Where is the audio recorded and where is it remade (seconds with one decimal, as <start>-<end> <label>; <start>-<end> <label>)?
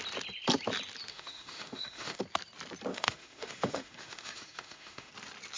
0.0-1.1 recorded; 1.1-2.2 remade; 2.2-2.9 recorded; 2.9-5.1 remade; 5.1-5.6 recorded